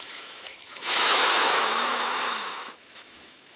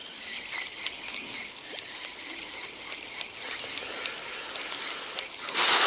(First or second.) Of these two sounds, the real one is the second